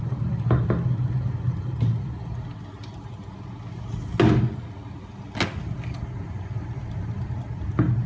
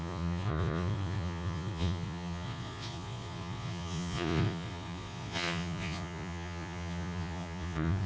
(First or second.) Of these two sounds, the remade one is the second